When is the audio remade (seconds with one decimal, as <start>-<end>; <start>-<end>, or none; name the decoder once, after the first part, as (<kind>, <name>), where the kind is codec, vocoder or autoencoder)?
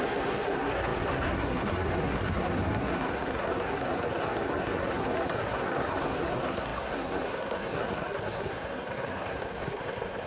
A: 0.0-10.3 (codec, SNAC)